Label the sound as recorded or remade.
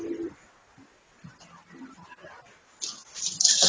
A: recorded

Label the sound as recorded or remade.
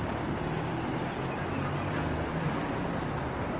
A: recorded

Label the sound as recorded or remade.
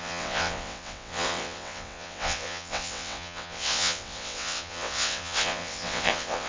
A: remade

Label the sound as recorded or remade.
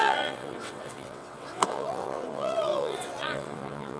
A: remade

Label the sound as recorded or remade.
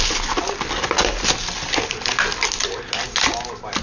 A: recorded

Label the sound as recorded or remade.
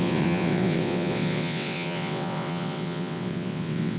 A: remade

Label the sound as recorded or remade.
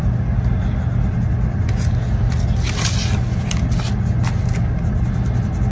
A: recorded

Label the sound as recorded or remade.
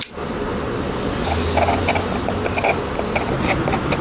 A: recorded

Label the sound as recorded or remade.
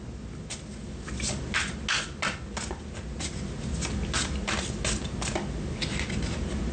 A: recorded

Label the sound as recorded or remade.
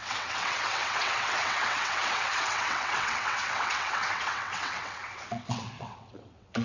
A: remade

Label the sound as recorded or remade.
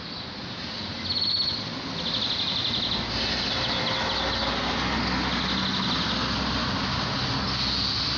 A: recorded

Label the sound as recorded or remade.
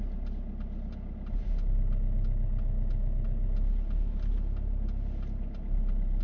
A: recorded